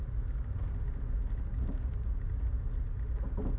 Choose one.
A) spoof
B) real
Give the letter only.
B